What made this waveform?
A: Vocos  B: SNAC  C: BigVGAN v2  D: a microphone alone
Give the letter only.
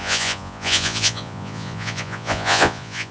A